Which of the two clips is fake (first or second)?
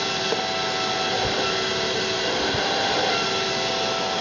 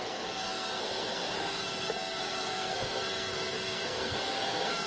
second